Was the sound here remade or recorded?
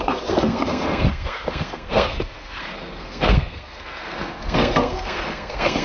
remade